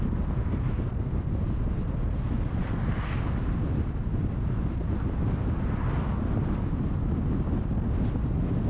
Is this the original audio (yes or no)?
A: yes